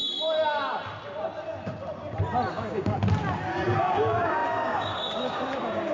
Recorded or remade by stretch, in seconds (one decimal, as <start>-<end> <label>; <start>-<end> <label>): 0.0-2.5 recorded; 2.5-3.0 remade; 3.0-3.8 recorded; 3.8-5.9 remade